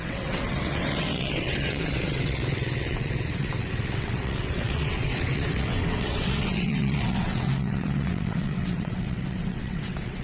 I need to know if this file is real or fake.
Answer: fake